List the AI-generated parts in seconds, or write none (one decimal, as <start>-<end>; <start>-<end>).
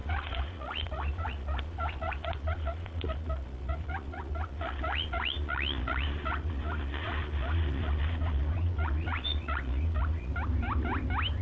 0.0-10.3